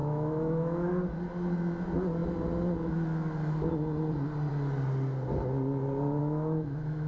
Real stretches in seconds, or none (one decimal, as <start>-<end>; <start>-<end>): 0.9-6.2

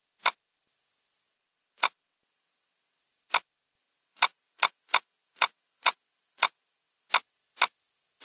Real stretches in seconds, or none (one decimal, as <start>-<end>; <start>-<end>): 0.0-1.3; 3.0-3.8; 7.1-8.2

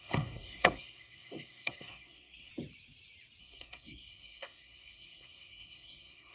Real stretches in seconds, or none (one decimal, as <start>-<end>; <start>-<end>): 2.5-3.4

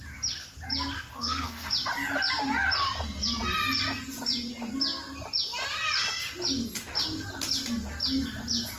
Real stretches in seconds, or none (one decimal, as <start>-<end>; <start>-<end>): 0.0-1.1; 1.7-8.8

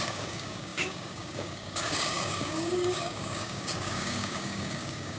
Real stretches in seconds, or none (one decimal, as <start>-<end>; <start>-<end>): none

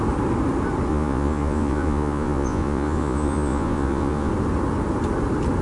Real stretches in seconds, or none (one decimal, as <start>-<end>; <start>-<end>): 0.0-0.9; 4.3-5.6

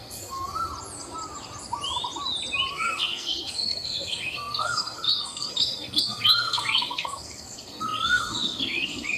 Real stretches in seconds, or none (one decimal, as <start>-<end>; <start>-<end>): 0.7-2.7

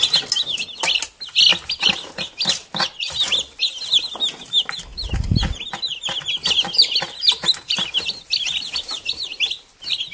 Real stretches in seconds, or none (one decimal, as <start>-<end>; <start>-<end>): 0.0-10.1